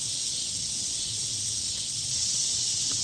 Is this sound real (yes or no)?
no